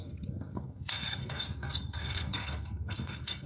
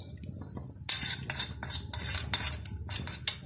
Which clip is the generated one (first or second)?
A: first